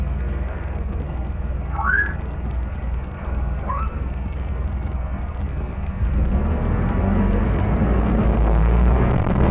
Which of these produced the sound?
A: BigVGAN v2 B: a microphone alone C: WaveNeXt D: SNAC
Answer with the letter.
D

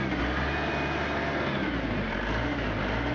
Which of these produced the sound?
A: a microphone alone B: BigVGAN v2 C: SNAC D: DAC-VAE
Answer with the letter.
A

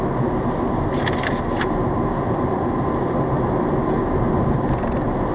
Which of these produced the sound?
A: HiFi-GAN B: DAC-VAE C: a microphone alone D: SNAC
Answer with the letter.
C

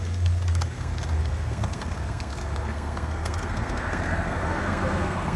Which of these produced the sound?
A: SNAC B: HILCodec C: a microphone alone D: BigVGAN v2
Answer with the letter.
A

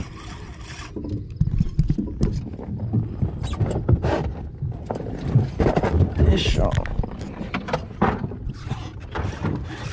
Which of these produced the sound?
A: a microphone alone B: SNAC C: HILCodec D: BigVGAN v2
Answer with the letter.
A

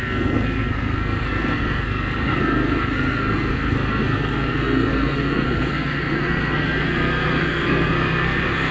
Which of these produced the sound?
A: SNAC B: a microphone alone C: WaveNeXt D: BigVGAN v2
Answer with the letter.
A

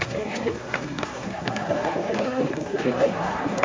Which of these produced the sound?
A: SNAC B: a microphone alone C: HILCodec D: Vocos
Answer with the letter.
A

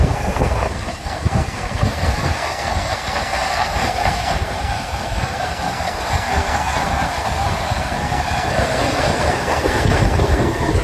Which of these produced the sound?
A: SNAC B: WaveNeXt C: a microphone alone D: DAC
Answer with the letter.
A